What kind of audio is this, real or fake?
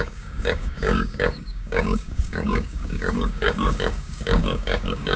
fake